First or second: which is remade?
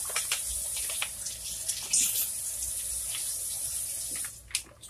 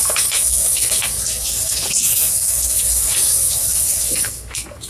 second